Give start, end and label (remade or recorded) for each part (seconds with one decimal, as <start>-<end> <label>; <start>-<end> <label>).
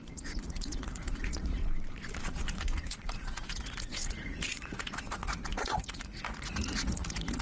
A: 0.0-1.6 remade; 1.6-2.2 recorded; 2.2-7.4 remade